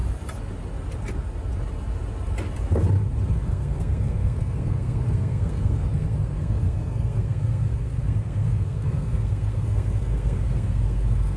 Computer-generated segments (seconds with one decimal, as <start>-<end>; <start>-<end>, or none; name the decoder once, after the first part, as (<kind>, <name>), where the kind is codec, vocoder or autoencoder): 3.3-11.4 (codec, SNAC)